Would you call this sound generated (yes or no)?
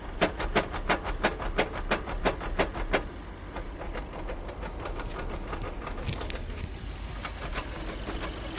no